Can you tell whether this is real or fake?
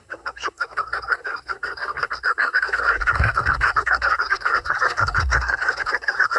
fake